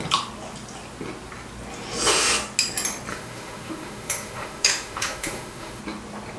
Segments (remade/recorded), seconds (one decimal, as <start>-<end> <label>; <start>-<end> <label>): 0.0-3.1 recorded; 3.1-5.8 remade; 5.8-6.4 recorded